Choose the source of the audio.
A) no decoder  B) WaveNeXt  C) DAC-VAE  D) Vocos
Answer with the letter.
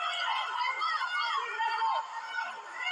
A